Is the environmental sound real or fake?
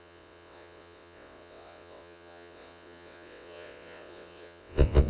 fake